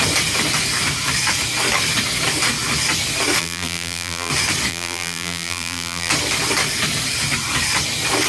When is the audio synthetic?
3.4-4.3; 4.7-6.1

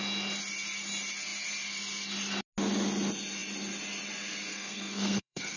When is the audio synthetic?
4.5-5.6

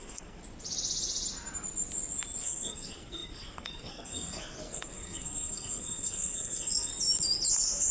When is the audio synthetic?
0.0-0.4; 2.4-6.9; 7.5-7.9

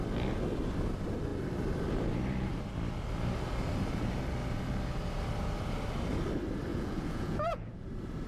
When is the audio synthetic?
6.7-7.7

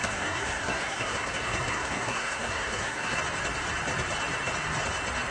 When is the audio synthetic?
0.0-3.2

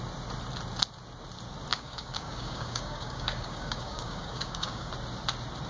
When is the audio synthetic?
1.7-4.9

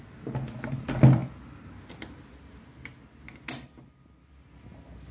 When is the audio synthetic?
none